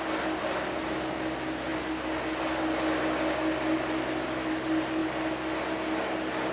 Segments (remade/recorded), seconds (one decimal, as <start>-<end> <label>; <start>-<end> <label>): 0.0-6.5 recorded

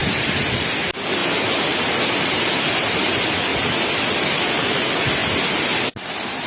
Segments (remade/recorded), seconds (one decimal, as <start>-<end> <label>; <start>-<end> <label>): 0.0-0.5 remade; 0.5-1.2 recorded; 1.2-2.1 remade; 2.1-6.5 recorded

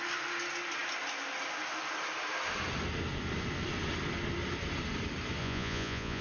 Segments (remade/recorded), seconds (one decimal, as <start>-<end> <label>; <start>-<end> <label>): 0.0-5.4 recorded; 5.4-6.2 remade

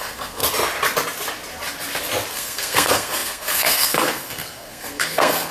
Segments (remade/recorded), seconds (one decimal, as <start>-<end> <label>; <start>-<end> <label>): 0.0-0.4 remade; 0.4-2.3 recorded; 2.3-5.5 remade

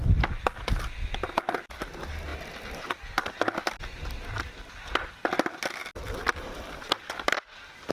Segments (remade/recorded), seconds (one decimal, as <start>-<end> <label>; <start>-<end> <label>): 0.0-7.9 recorded

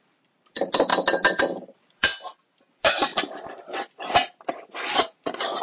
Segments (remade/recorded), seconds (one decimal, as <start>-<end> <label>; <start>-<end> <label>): 0.0-0.9 remade; 0.9-1.4 recorded; 1.4-2.1 remade; 2.1-2.7 recorded; 2.7-5.6 remade